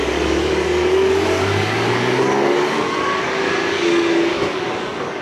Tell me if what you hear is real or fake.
fake